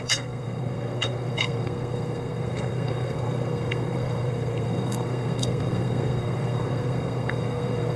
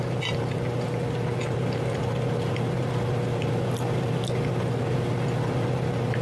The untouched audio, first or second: second